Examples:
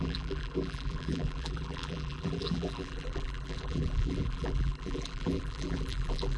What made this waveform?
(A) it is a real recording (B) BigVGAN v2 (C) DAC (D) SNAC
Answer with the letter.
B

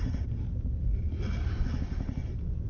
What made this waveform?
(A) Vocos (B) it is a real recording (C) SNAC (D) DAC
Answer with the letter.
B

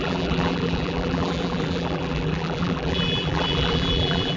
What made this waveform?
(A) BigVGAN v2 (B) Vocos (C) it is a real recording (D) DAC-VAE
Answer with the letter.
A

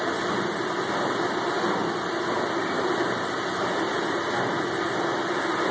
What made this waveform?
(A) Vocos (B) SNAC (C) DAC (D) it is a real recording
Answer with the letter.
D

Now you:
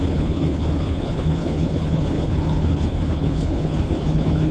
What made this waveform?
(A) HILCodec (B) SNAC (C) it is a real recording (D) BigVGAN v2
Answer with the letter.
A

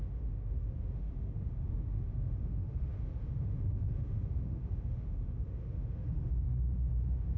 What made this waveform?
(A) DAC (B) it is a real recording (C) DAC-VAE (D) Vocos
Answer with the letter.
C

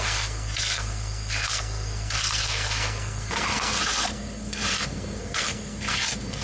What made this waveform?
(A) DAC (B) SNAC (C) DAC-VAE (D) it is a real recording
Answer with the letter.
B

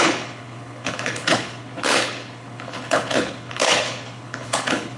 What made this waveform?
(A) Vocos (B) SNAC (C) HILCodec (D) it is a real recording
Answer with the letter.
C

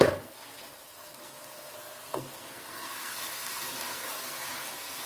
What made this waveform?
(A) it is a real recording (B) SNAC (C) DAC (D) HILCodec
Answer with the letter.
B